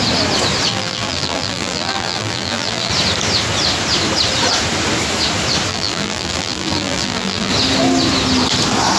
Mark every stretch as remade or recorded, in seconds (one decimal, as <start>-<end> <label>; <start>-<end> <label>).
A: 0.0-0.7 recorded; 0.7-2.9 remade; 2.9-5.7 recorded; 5.7-7.5 remade; 7.5-9.0 recorded